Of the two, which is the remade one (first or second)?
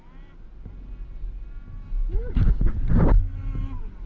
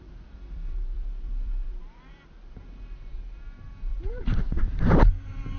second